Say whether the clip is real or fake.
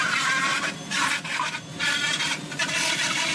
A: real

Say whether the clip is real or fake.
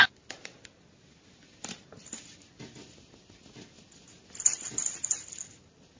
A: real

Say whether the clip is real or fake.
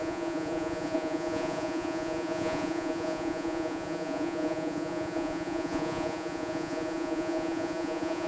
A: fake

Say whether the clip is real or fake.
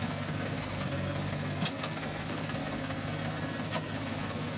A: fake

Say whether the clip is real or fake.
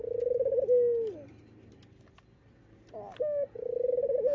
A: real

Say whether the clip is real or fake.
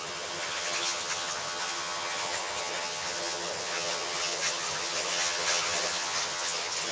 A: fake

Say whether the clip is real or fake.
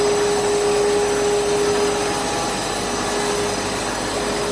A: real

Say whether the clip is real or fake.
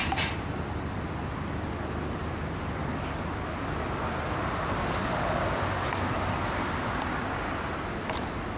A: real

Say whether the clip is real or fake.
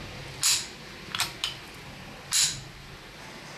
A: real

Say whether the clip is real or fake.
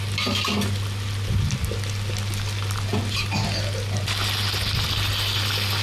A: real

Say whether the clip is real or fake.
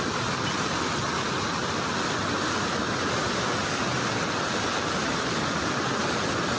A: real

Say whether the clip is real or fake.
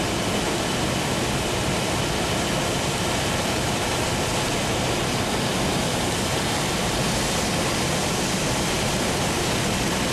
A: real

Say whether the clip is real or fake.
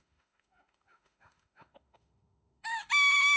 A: fake